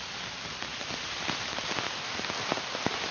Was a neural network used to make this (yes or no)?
no